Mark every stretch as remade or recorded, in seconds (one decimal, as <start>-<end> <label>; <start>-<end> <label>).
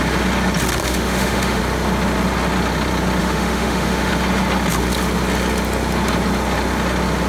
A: 0.0-0.8 recorded; 0.8-1.6 remade; 1.6-3.2 recorded; 3.2-4.1 remade; 4.1-7.3 recorded